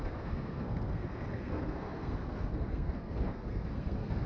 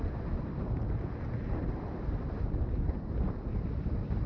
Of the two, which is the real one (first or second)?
second